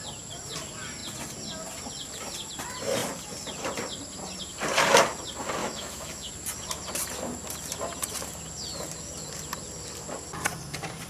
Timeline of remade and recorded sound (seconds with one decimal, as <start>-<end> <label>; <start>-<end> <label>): 0.0-5.6 recorded; 5.6-6.3 remade; 6.3-11.1 recorded